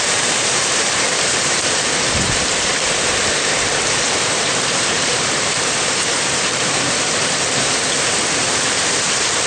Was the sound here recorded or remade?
remade